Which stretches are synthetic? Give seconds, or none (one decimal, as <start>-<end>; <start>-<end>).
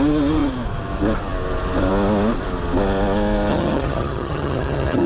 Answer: 3.5-5.1